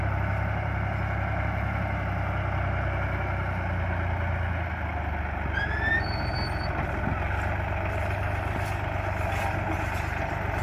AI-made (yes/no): no